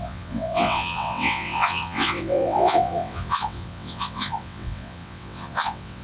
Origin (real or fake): fake